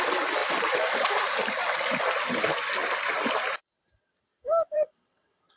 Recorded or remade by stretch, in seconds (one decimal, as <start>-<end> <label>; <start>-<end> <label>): 0.0-0.4 recorded; 0.4-2.0 remade; 2.0-2.8 recorded; 2.8-3.5 remade; 3.5-4.3 recorded; 4.3-4.9 remade; 4.9-5.6 recorded

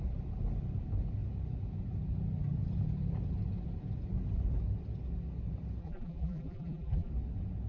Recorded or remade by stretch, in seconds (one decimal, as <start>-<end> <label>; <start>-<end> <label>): 0.0-5.8 recorded; 5.8-7.1 remade; 7.1-7.7 recorded